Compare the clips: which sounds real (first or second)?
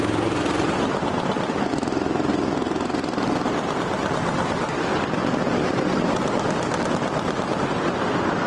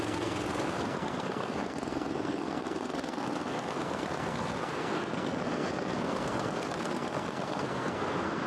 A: first